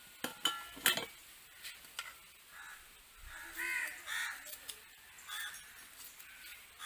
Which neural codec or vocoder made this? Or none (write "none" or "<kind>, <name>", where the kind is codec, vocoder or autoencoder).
none